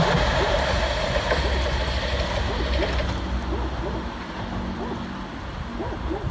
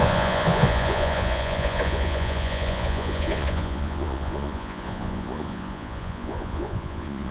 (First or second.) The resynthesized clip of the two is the second